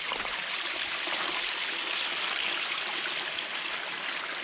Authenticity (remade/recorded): recorded